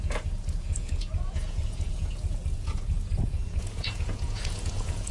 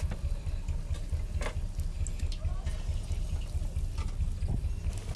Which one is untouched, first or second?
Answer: second